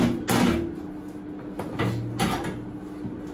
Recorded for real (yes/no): yes